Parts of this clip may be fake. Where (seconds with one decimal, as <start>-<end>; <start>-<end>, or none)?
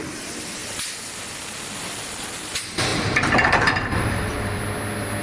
2.9-4.6